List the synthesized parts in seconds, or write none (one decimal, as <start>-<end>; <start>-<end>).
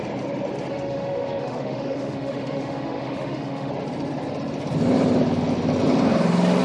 0.7-3.7